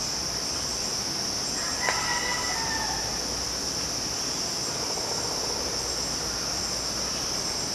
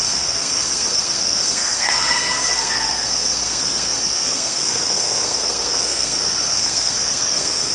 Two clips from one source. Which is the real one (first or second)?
first